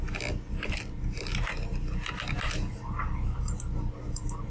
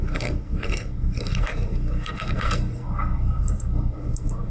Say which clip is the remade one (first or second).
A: second